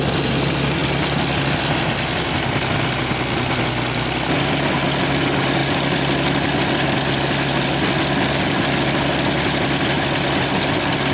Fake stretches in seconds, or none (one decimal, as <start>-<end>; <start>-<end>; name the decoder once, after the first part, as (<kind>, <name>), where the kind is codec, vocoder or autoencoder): none